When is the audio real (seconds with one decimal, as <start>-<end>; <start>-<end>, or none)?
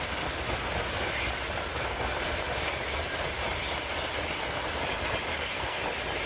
0.0-5.3; 5.8-6.3